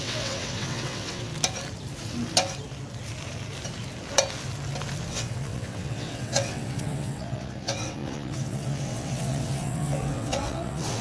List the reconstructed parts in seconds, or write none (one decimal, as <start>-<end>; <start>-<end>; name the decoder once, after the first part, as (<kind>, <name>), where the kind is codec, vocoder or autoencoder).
0.0-1.3 (vocoder, WaveNeXt); 5.1-11.0